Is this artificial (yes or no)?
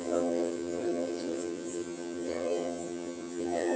yes